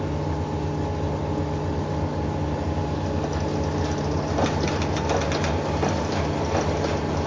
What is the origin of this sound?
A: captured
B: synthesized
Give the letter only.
A